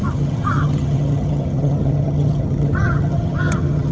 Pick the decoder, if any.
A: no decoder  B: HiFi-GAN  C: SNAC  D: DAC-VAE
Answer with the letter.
B